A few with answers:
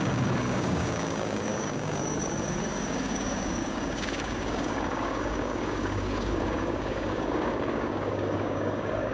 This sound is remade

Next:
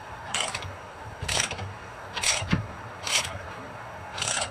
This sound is remade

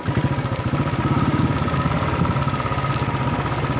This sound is recorded